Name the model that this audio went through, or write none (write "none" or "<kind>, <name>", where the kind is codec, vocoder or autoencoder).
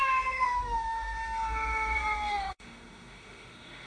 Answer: autoencoder, DAC-VAE